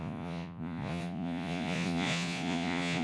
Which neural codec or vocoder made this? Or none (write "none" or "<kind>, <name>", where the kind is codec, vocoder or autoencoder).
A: vocoder, Vocos